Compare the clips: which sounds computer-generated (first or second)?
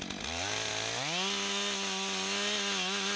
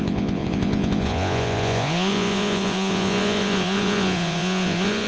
second